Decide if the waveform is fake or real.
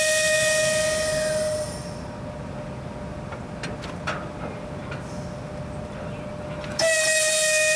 real